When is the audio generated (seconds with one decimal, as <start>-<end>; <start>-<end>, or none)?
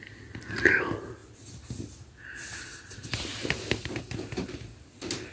none